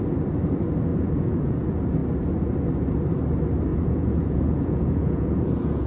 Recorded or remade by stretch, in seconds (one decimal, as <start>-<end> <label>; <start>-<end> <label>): 0.0-0.9 recorded; 0.9-1.6 remade; 1.6-3.7 recorded; 3.7-5.9 remade